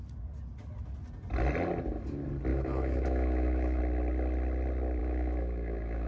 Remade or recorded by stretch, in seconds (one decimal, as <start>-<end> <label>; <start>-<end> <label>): 0.0-2.5 recorded; 2.5-3.8 remade; 3.8-5.0 recorded; 5.0-6.1 remade